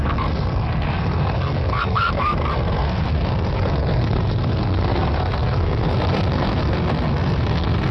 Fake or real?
fake